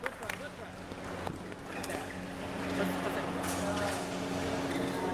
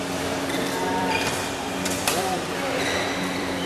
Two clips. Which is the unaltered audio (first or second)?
first